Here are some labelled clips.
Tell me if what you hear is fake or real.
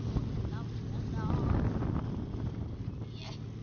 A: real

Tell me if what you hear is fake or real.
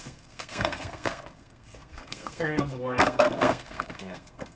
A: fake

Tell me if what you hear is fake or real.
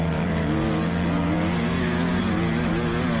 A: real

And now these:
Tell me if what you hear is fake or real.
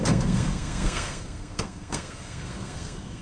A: fake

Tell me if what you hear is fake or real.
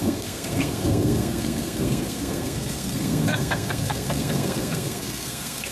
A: fake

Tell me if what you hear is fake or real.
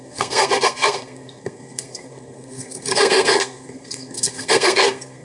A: fake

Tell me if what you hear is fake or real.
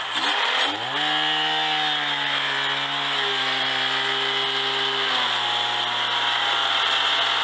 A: real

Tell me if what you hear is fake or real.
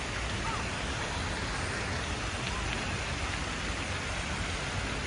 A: real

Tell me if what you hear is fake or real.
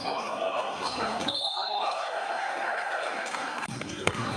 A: fake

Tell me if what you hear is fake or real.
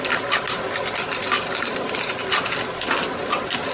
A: real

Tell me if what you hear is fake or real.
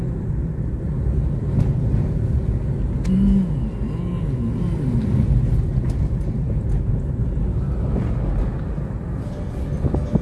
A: real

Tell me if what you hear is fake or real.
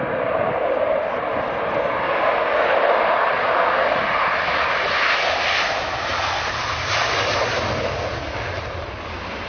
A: real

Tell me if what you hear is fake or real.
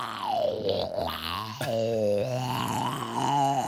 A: real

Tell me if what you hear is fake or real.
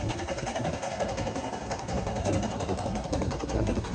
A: fake